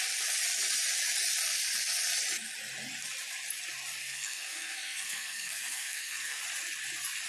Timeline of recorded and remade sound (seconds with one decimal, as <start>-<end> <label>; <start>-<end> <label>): 0.0-4.0 recorded; 4.0-6.4 remade; 6.4-7.3 recorded